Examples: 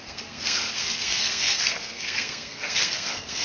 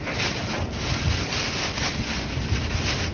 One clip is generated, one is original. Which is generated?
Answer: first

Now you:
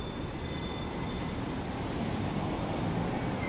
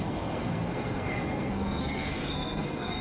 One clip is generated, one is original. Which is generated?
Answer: second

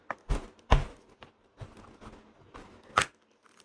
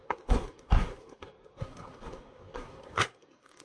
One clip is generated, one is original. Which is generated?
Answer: second